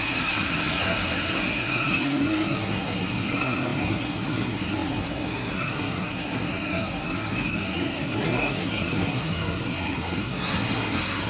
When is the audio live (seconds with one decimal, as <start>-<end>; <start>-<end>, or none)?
none